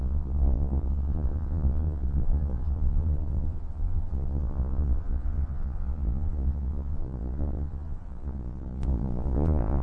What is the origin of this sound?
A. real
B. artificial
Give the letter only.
B